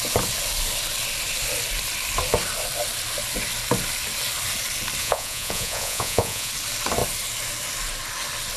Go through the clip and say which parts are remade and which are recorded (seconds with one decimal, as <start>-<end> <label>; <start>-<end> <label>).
0.0-5.0 recorded; 5.0-6.5 remade; 6.5-8.6 recorded

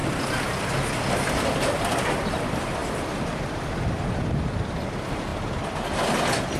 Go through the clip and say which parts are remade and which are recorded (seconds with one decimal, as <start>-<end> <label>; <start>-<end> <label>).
0.0-1.3 recorded; 1.3-5.3 remade; 5.3-6.6 recorded

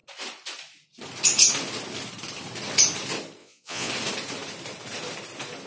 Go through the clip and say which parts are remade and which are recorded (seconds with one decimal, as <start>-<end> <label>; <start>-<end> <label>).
0.0-3.4 recorded; 3.4-3.9 remade; 3.9-5.7 recorded

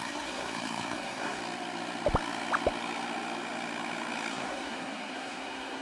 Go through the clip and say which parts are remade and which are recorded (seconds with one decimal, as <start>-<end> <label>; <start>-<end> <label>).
0.0-1.4 remade; 1.4-4.3 recorded; 4.3-5.8 remade

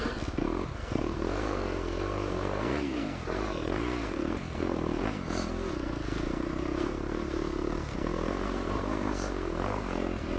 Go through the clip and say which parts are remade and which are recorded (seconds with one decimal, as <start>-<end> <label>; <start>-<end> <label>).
0.0-10.4 remade

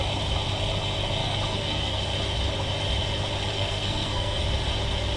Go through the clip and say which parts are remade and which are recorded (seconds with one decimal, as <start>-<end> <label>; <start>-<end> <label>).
0.0-1.2 recorded; 1.2-2.0 remade; 2.0-3.5 recorded; 3.5-4.4 remade; 4.4-5.2 recorded